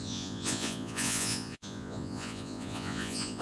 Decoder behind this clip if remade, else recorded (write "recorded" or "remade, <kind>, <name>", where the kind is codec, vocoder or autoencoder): remade, vocoder, Vocos